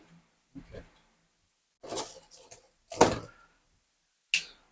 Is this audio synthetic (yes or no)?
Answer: no